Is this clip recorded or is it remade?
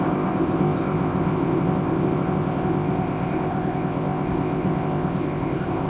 remade